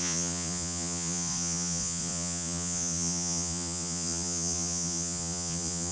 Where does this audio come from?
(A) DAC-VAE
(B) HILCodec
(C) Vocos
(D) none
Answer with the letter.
C